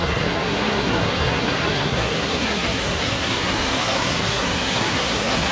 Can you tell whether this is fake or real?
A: fake